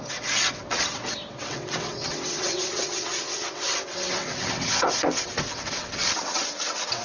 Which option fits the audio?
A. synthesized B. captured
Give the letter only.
A